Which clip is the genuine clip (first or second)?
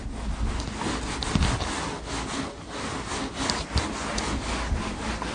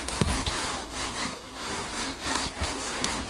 first